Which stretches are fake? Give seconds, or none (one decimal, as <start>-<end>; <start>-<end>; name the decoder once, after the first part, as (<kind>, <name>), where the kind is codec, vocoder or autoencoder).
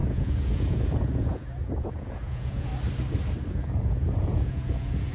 0.0-2.7 (vocoder, Vocos); 3.5-5.1